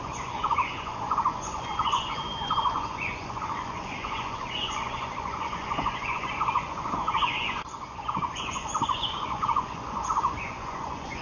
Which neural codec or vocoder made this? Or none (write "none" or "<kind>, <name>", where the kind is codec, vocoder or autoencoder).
vocoder, Vocos